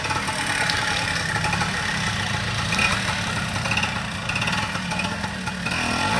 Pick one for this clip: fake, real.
real